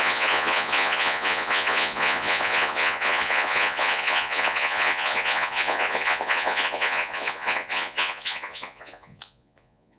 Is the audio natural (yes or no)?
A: no